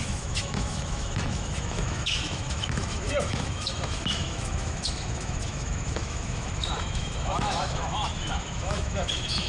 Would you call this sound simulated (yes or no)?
yes